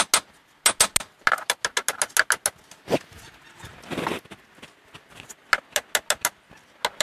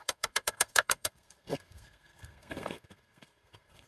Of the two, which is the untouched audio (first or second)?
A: first